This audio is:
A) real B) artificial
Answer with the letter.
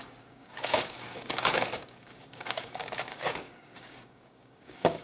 B